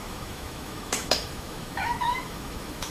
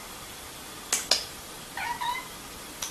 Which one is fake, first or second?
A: first